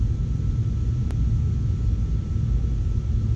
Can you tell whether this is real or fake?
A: real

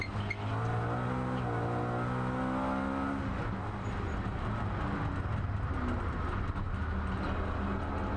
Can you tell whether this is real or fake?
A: real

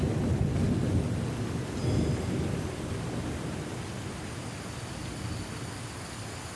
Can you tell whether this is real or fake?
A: real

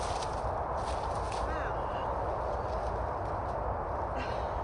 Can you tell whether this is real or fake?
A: real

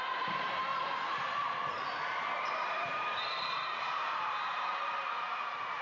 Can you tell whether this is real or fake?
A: fake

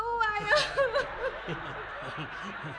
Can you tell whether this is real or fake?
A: real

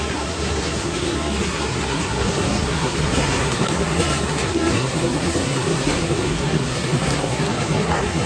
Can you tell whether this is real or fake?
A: fake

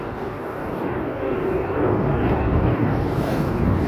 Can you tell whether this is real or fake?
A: fake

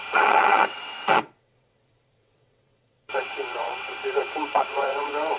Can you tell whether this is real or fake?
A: fake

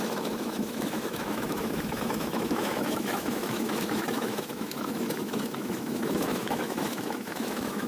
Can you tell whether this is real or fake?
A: fake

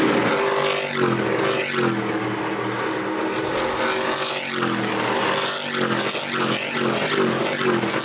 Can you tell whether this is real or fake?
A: real